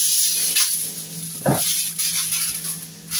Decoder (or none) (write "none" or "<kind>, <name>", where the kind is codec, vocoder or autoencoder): none